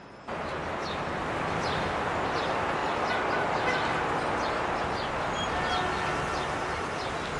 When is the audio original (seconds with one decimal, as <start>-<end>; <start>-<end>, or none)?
0.0-7.4